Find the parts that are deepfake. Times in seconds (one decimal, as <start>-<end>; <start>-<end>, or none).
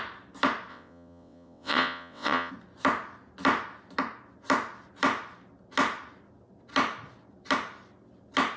0.7-2.5